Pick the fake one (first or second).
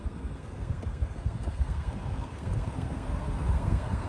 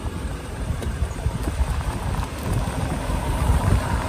first